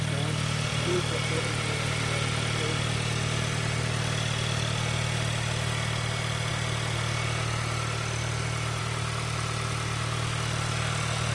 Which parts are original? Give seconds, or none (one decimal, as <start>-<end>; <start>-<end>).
0.0-0.7; 1.4-11.3